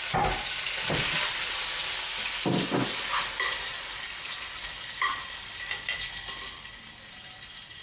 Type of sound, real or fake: real